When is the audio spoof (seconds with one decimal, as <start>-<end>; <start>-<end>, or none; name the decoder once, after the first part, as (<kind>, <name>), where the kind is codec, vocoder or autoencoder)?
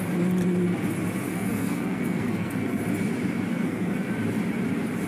1.3-2.8 (codec, SNAC); 3.5-4.1